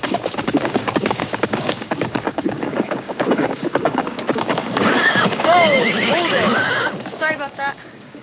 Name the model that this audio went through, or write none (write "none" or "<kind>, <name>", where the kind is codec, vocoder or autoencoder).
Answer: codec, DAC